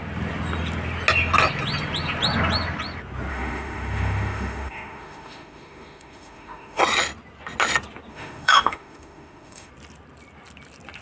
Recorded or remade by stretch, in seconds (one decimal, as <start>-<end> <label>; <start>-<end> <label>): 0.0-3.3 recorded; 3.3-6.8 remade; 6.8-8.1 recorded; 8.1-9.7 remade; 9.7-11.0 recorded